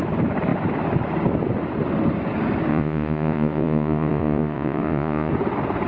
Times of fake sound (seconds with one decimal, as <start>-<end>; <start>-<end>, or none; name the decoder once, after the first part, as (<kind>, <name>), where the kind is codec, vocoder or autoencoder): 2.7-5.3 (vocoder, Vocos)